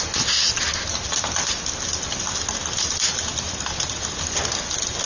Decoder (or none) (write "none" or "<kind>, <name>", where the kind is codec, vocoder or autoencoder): none